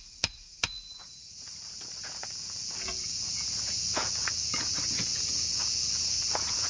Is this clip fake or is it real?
fake